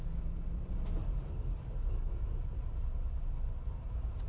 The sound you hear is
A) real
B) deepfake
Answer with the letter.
A